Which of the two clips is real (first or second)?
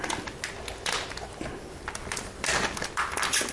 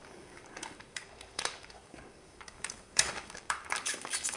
first